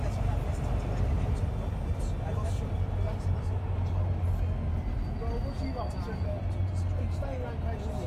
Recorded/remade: recorded